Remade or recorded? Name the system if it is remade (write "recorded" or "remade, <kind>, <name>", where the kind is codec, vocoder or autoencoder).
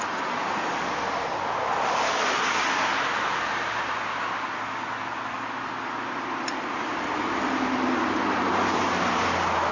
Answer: recorded